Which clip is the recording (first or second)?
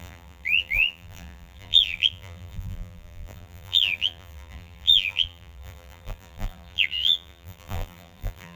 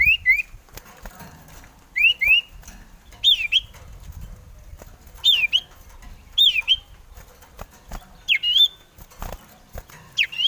second